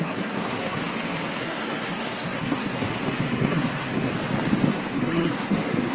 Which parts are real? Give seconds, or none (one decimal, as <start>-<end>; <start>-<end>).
0.8-1.4; 4.1-4.7